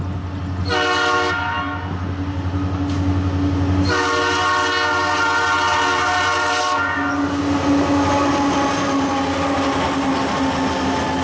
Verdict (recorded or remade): recorded